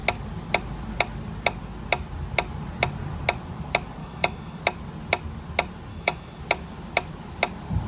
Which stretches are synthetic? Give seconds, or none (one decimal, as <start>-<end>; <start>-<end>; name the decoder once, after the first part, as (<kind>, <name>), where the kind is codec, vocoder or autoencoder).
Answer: 4.0-4.6 (autoencoder, DAC-VAE); 5.9-6.4

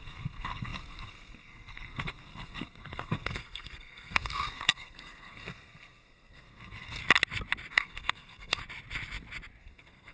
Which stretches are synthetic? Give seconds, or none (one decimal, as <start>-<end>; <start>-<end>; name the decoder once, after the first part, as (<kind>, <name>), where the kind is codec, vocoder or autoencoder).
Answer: 0.0-7.0 (codec, SNAC); 7.7-8.6; 9.6-10.1

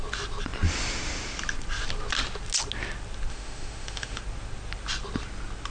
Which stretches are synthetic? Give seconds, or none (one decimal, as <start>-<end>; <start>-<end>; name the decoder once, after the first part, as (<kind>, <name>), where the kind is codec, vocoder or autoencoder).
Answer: 3.3-4.2 (autoencoder, DAC-VAE)

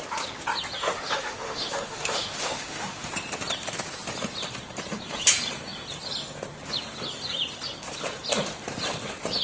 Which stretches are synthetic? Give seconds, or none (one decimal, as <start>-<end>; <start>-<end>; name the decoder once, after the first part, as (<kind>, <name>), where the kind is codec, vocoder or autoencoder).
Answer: 0.8-3.1 (autoencoder, DAC-VAE)

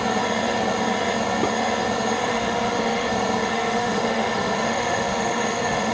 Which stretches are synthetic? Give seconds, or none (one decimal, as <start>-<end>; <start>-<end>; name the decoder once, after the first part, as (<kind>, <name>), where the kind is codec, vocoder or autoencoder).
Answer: 2.2-3.1 (autoencoder, DAC-VAE); 3.5-5.9